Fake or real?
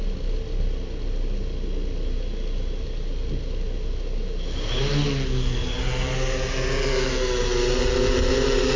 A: real